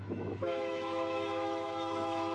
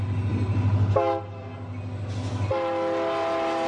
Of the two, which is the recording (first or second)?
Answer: second